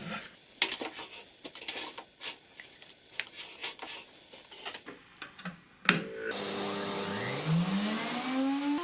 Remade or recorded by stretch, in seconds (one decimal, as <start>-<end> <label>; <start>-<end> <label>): 0.0-8.8 recorded